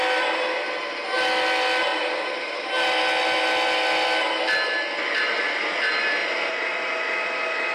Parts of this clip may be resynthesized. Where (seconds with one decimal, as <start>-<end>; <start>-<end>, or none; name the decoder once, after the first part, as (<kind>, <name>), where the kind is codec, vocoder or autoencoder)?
1.9-2.7 (vocoder, BigVGAN v2)